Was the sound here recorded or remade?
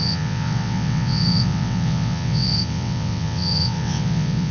remade